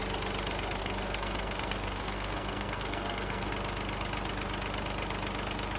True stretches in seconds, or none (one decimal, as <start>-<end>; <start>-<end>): 0.0-0.8; 3.5-5.8